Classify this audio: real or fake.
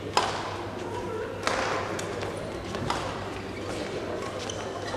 real